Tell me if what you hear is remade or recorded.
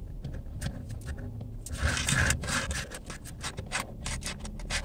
recorded